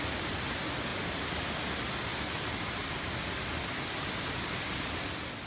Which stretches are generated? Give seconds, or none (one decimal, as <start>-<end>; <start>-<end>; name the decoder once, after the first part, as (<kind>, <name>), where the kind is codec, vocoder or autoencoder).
none